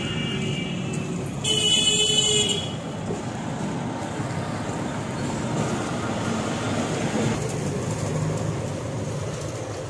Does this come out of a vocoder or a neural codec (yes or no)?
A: no